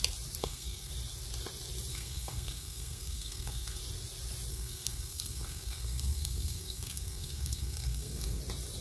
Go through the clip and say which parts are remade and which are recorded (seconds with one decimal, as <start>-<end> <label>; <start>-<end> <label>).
0.0-0.4 recorded; 0.4-0.9 remade; 0.9-1.9 recorded; 1.9-3.8 remade; 3.8-4.5 recorded; 4.5-8.4 remade; 8.4-8.8 recorded